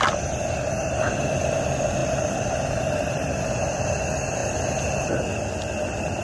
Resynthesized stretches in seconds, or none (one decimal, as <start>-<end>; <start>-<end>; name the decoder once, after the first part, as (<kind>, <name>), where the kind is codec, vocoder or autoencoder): 2.0-3.5 (vocoder, BigVGAN v2)